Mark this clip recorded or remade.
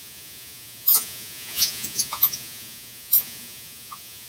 remade